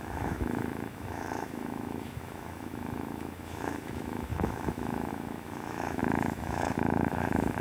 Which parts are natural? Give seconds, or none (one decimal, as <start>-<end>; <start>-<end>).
none